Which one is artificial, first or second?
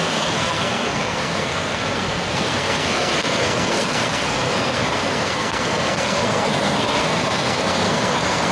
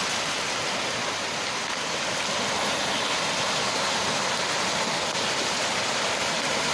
first